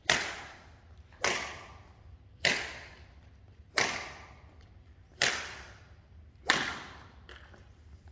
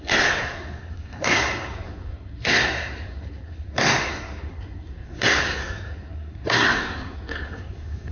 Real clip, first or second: first